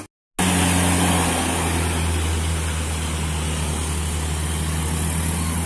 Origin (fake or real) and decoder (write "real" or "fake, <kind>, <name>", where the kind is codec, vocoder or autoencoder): real